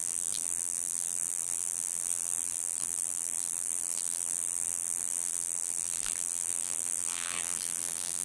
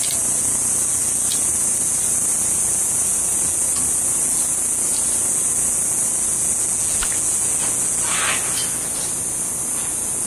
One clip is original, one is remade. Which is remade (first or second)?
first